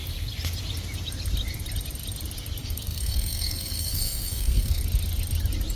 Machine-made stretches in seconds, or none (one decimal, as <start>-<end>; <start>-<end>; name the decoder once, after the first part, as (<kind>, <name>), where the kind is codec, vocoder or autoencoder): 2.6-4.8 (codec, SNAC)